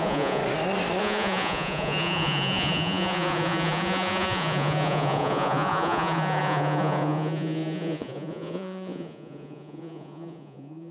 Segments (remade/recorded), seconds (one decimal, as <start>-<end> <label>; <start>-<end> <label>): 0.0-0.4 remade; 0.4-1.0 recorded; 1.0-10.9 remade